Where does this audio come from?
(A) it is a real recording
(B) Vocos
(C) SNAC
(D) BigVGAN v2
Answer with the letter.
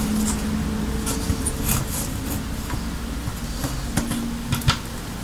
A